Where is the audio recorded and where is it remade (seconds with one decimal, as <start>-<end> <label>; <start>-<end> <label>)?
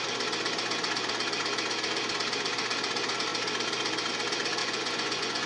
0.0-4.6 recorded; 4.6-5.5 remade